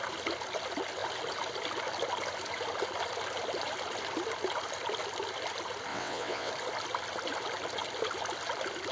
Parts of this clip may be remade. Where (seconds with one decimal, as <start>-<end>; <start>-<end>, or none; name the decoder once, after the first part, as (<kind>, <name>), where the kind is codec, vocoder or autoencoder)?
5.9-6.5 (vocoder, WaveNeXt)